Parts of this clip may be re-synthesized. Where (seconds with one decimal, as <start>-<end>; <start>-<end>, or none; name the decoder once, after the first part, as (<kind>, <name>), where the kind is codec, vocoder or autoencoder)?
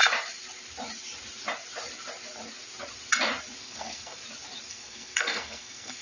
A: 3.6-4.2 (codec, SNAC); 4.7-6.0